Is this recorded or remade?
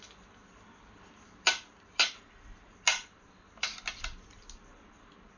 recorded